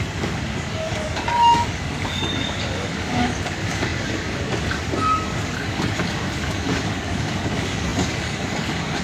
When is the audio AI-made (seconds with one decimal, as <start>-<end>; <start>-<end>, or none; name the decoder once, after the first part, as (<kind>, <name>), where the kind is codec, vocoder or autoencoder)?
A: 0.0-9.0 (codec, DAC)